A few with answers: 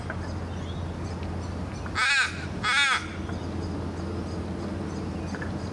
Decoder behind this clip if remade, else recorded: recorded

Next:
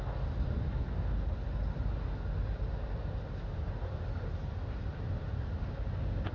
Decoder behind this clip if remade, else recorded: recorded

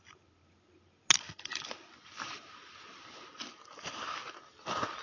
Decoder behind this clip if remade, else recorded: recorded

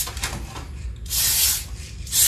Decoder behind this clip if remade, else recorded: recorded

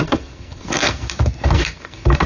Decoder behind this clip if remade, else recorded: remade, codec, SNAC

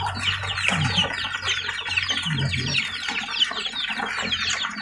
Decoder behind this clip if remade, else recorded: recorded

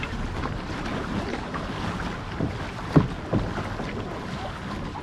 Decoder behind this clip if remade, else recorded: recorded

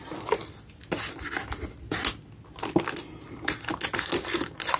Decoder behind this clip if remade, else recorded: recorded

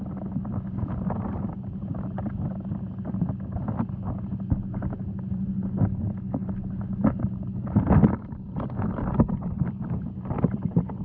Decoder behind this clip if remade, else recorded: recorded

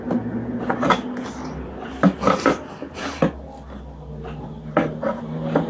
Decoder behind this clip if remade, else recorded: recorded